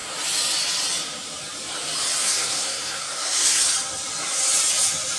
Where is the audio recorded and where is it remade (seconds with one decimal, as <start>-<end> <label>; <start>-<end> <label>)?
0.0-2.2 recorded; 2.2-3.6 remade; 3.6-5.2 recorded